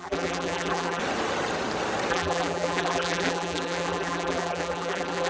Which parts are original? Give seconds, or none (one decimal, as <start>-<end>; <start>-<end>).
1.0-2.1